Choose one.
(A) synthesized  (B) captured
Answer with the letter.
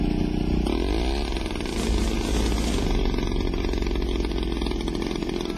B